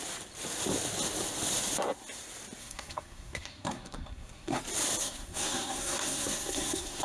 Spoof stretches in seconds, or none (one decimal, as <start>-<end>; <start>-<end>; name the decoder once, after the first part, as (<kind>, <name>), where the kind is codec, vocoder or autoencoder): 2.6-4.6 (codec, SNAC); 5.0-7.0